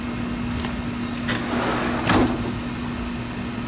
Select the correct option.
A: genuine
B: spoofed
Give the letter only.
A